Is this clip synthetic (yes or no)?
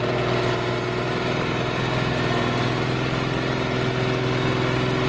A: no